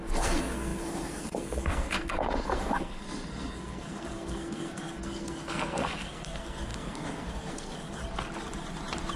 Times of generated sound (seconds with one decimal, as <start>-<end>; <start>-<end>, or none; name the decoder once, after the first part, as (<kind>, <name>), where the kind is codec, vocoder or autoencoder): 0.0-8.0 (codec, SNAC)

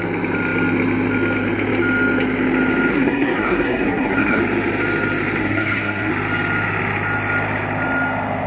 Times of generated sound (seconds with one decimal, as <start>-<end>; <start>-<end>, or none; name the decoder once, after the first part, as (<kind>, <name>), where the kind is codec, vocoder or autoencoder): 2.9-4.4 (codec, SNAC); 5.4-6.1

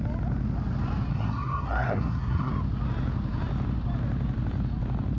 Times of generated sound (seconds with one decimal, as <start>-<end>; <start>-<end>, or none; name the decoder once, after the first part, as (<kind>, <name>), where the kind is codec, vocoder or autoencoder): 1.1-2.5 (codec, SNAC)

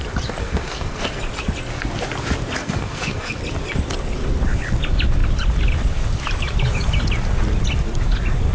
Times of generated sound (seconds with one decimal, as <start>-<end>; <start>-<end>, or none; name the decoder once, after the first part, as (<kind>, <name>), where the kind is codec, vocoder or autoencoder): 0.4-1.2 (codec, SNAC); 2.6-3.4